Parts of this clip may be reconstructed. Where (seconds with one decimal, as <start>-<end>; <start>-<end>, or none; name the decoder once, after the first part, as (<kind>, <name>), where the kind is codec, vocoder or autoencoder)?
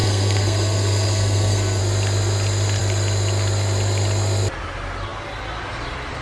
0.0-1.8 (codec, SNAC)